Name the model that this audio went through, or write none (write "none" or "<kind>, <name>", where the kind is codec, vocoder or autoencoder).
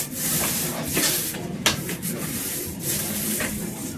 vocoder, BigVGAN v2